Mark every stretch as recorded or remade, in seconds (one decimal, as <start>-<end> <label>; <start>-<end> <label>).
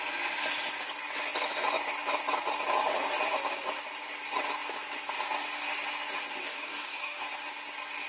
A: 0.0-6.4 recorded; 6.4-7.2 remade; 7.2-8.1 recorded